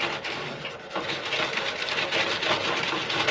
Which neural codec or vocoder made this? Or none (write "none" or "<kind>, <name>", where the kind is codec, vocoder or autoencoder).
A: none